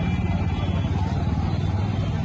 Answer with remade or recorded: recorded